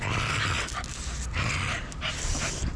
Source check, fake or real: real